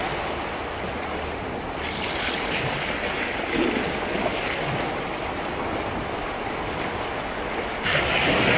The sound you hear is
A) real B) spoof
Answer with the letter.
A